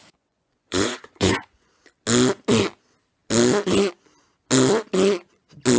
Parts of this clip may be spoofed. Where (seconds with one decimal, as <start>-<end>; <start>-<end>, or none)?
0.0-1.7